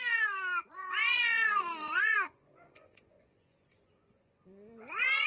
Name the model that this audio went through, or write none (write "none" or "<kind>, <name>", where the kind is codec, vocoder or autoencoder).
vocoder, Vocos